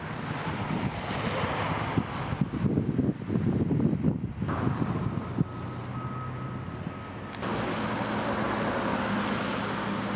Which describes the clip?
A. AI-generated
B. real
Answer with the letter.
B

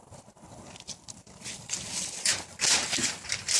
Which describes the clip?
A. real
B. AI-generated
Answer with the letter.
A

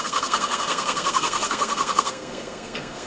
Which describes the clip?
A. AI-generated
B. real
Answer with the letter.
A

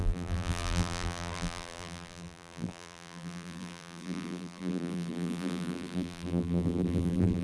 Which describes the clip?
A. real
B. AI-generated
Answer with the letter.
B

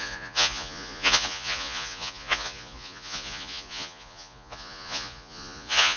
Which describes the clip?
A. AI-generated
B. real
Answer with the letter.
A